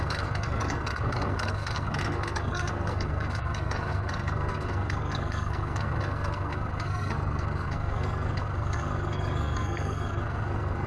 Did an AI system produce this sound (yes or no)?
yes